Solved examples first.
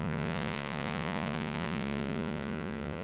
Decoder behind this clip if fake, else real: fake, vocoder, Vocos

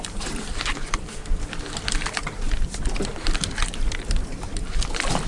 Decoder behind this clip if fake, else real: real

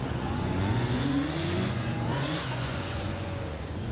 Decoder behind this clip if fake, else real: fake, vocoder, Vocos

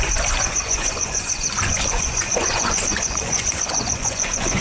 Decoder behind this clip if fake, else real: fake, vocoder, Vocos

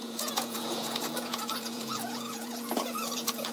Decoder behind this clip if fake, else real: fake, vocoder, Vocos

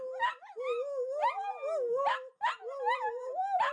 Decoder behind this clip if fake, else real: real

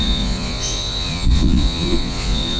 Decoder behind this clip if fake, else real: fake, vocoder, Vocos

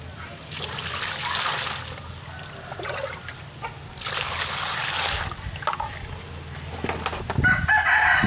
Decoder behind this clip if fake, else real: real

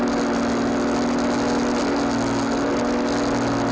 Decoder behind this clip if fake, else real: real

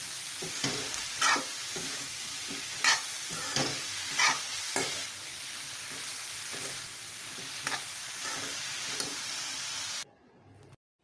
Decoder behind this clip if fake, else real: real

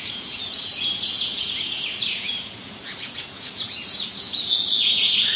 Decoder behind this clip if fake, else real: fake, vocoder, Vocos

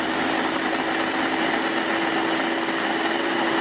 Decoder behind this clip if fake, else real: real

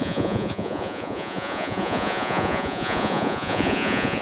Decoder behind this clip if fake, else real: fake, vocoder, Vocos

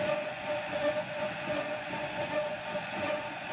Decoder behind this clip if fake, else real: fake, vocoder, Vocos